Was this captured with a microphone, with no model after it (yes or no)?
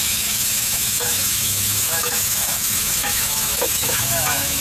no